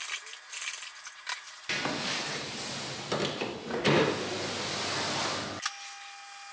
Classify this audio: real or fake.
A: real